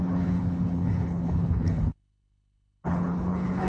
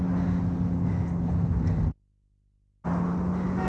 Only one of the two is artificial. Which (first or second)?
first